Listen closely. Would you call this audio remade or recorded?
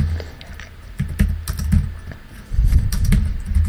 recorded